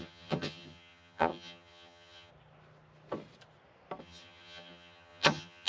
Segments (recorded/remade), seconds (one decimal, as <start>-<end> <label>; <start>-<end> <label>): 0.0-2.3 remade; 2.3-4.0 recorded; 4.0-5.7 remade